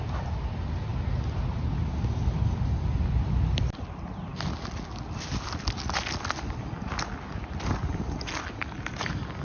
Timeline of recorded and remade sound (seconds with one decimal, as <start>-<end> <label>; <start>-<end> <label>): 0.0-9.4 recorded